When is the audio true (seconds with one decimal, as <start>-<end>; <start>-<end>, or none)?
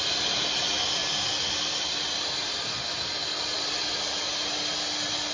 0.0-1.0; 2.5-3.2; 4.6-5.3